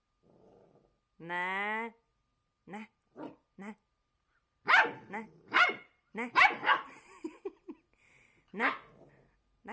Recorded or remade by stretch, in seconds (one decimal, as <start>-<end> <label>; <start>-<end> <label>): 0.0-2.6 recorded; 2.6-7.4 remade; 7.4-9.7 recorded